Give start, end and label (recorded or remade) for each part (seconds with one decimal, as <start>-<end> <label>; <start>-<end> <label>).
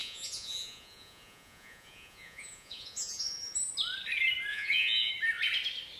0.0-3.6 remade; 3.6-4.5 recorded; 4.5-5.1 remade; 5.1-6.0 recorded